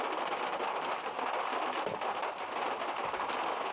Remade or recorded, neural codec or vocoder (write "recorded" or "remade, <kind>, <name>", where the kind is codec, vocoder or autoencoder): recorded